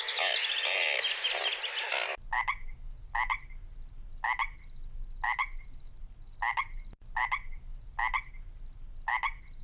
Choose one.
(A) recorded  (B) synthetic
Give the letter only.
A